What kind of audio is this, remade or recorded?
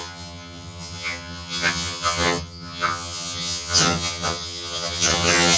remade